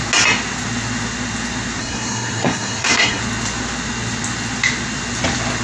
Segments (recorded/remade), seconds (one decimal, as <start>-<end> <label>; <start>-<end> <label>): 0.0-1.8 recorded; 1.8-3.2 remade; 3.2-5.6 recorded